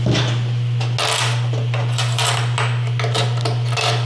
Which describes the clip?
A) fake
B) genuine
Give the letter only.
B